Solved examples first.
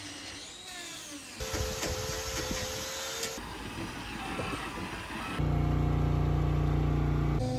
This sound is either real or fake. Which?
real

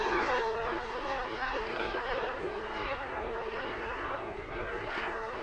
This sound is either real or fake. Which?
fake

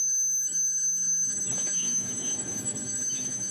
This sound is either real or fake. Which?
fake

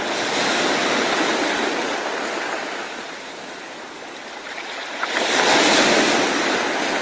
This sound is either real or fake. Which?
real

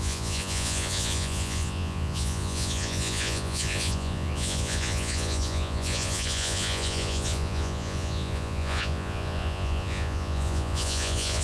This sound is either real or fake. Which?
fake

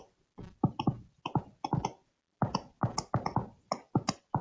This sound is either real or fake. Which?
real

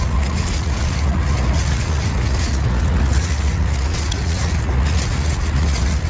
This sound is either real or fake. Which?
fake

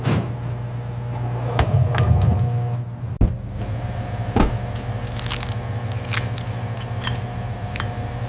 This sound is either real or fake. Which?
real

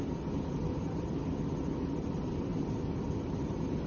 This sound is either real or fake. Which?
real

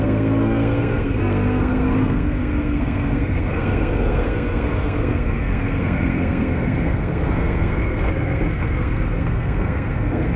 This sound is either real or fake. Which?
fake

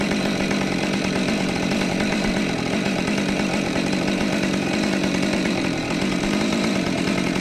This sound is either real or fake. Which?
fake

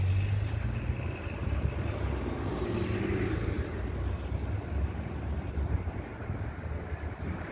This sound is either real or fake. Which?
real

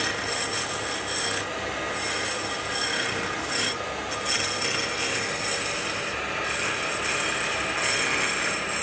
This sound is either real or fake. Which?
real